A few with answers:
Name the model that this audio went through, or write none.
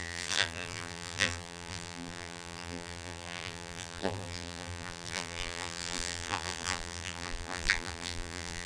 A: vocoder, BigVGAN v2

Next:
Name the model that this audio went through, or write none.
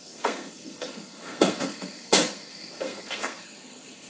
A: codec, SNAC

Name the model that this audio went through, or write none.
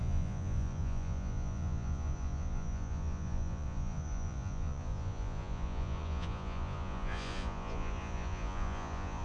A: vocoder, Vocos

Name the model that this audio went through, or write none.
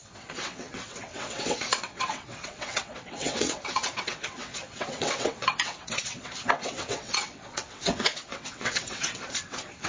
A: vocoder, WaveNeXt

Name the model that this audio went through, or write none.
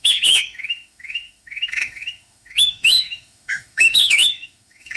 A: autoencoder, DAC-VAE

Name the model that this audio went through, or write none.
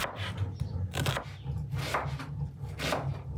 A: none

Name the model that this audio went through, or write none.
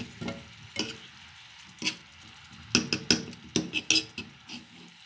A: none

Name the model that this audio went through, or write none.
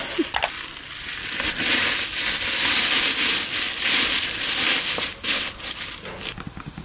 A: none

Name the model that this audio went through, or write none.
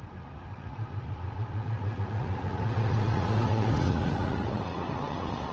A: vocoder, Vocos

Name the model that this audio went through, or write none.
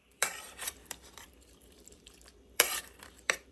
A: vocoder, BigVGAN v2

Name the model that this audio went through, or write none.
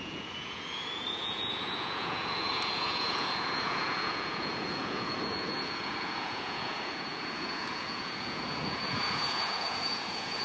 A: vocoder, Vocos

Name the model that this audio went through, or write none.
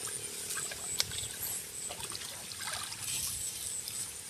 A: none